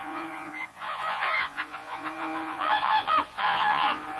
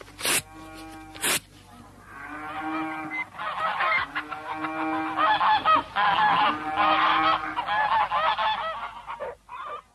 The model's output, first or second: first